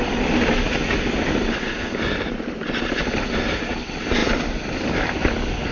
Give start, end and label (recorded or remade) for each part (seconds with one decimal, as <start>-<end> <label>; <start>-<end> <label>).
0.0-5.7 recorded